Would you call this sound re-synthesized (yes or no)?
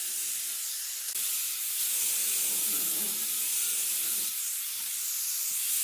yes